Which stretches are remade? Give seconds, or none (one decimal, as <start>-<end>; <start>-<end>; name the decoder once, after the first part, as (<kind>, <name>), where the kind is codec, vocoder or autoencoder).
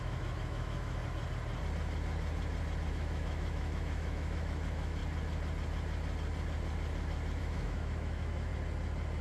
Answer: 0.0-1.0 (autoencoder, DAC-VAE); 2.9-5.0; 7.4-8.5